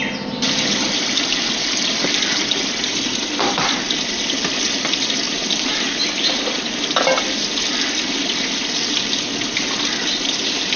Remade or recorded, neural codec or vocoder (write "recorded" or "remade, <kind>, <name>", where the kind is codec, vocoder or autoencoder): recorded